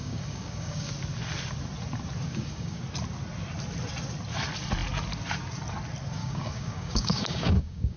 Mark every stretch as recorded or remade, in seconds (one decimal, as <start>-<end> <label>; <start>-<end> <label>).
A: 0.0-0.9 remade; 0.9-2.3 recorded; 2.3-2.8 remade; 2.8-6.2 recorded; 6.2-8.0 remade